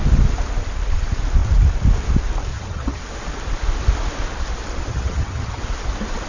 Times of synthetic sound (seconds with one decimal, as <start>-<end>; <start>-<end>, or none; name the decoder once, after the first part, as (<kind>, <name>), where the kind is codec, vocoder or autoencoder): 2.5-3.0 (vocoder, HiFi-GAN); 4.9-5.6